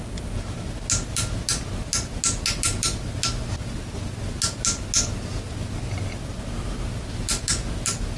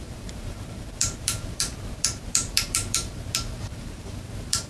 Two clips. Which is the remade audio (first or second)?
second